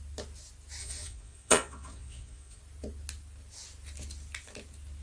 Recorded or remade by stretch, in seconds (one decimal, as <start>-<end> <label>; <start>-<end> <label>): 0.0-0.8 recorded; 0.8-2.6 remade; 2.6-5.0 recorded